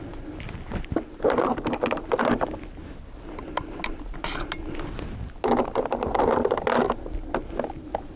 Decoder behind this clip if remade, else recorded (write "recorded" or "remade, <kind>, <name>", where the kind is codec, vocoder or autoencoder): recorded